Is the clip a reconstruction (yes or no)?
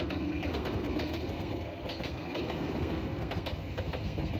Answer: yes